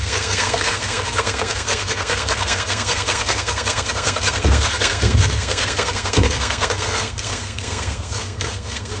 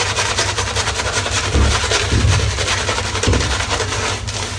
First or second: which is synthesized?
first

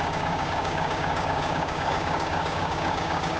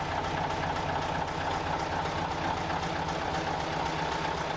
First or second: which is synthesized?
first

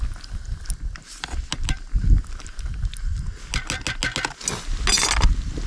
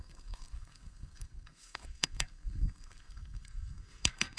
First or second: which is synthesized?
second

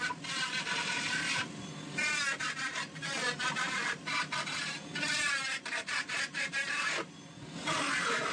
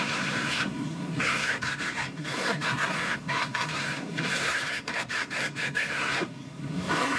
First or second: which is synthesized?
second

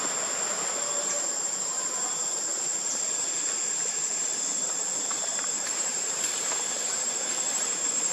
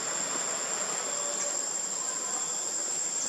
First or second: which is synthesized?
first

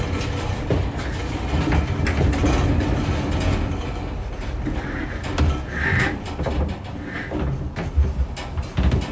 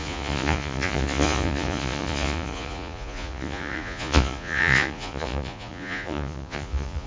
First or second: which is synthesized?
second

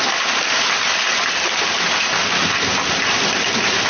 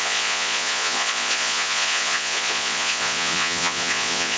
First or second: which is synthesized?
second